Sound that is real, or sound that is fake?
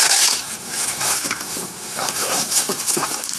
fake